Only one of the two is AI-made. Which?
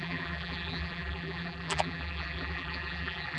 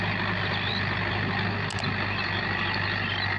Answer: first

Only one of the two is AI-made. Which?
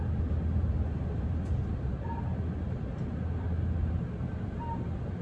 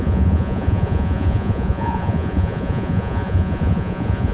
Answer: second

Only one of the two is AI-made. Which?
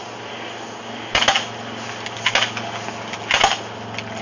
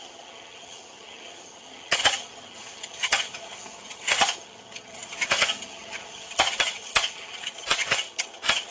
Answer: second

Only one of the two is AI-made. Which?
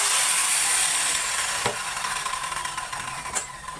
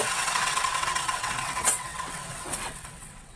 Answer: second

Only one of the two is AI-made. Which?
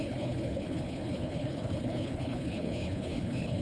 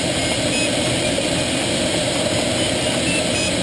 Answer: first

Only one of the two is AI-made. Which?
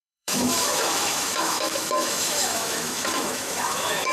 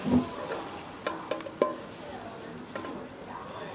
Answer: first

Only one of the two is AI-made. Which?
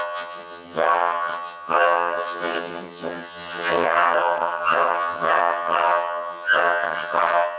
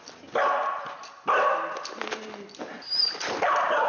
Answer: first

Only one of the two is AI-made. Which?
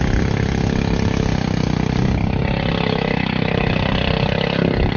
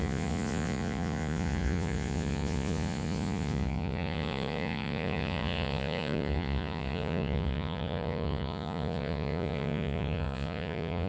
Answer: second